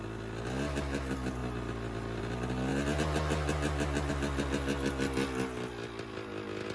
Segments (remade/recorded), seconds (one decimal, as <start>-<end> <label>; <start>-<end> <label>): 0.0-6.7 recorded